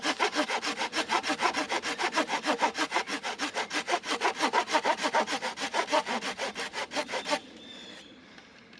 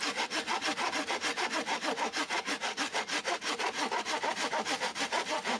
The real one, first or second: first